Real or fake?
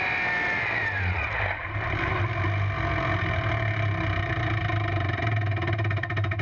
real